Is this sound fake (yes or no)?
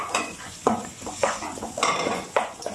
yes